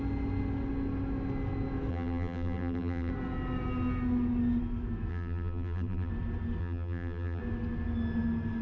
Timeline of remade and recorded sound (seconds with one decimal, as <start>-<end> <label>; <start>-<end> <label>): 0.0-1.9 recorded; 1.9-3.1 remade; 3.1-5.1 recorded; 5.1-6.1 remade; 6.1-6.6 recorded; 6.6-7.4 remade; 7.4-8.6 recorded